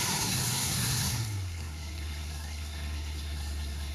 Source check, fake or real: fake